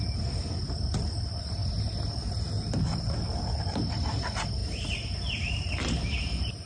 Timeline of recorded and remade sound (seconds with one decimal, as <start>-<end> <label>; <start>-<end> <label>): 0.0-6.7 recorded